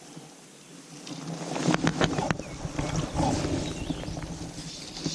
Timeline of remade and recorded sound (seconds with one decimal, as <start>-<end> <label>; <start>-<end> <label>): 0.0-5.1 recorded